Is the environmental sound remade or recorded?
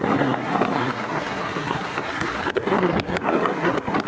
remade